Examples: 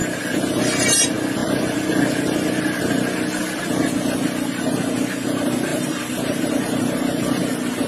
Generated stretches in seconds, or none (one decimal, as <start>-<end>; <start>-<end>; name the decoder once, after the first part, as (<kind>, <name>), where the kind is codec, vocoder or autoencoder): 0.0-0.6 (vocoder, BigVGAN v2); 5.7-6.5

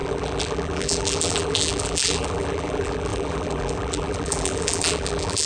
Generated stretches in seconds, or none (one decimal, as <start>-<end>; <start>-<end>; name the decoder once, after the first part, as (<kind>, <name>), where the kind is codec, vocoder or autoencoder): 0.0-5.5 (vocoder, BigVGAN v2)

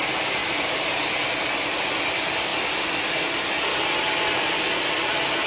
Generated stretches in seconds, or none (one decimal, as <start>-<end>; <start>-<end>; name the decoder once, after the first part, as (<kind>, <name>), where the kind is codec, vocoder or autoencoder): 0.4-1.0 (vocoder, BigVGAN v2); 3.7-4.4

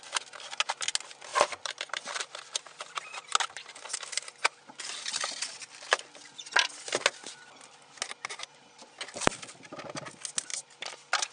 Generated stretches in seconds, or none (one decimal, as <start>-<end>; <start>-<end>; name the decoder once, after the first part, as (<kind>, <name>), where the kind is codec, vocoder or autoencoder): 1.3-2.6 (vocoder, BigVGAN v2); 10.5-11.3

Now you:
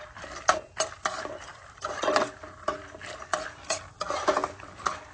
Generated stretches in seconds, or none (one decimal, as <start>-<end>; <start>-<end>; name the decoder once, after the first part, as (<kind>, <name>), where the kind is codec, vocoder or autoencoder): 0.0-5.1 (vocoder, BigVGAN v2)

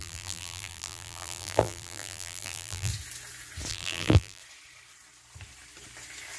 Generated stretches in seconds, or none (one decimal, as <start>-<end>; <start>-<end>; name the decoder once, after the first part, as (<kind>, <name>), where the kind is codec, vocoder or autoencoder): 0.0-2.9 (vocoder, BigVGAN v2); 3.7-4.4

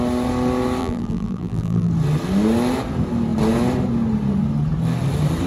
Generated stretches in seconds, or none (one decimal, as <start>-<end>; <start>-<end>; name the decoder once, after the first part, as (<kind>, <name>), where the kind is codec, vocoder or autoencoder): 0.8-1.9 (vocoder, BigVGAN v2)